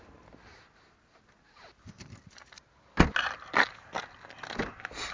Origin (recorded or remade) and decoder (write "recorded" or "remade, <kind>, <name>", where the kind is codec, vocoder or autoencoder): recorded